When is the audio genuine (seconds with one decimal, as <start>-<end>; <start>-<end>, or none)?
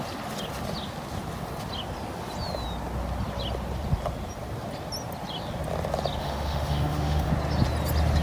0.0-6.2; 7.3-8.2